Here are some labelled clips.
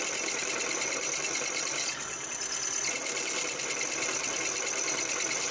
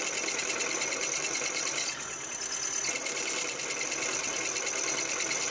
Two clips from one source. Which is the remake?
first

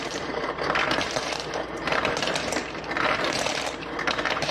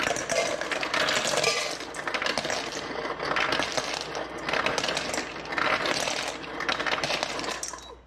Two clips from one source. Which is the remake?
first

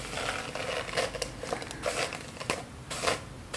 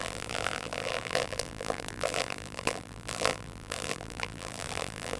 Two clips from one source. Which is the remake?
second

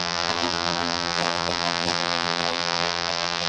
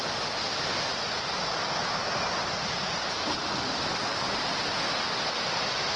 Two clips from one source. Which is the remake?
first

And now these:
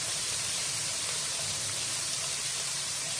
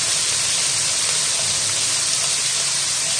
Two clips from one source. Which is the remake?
first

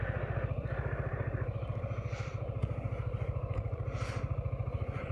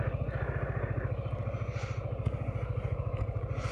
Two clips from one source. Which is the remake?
first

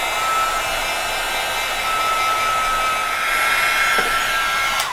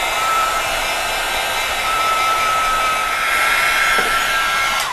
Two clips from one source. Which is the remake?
second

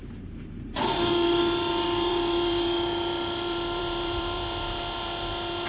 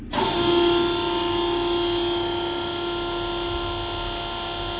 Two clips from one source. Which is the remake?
first